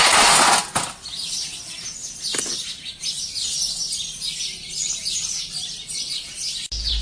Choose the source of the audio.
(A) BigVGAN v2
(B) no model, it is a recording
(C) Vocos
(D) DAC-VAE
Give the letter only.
B